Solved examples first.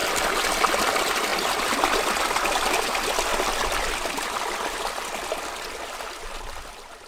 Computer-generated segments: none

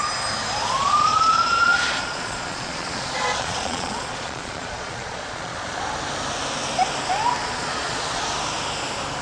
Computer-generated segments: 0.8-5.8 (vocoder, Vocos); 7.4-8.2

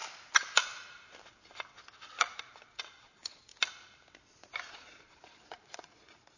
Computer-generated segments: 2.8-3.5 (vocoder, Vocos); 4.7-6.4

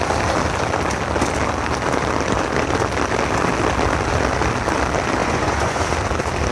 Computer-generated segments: 5.2-5.8 (vocoder, Vocos)

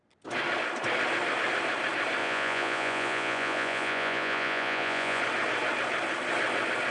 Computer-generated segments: 2.2-5.2 (vocoder, Vocos)

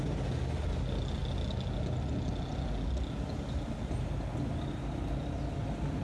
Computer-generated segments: none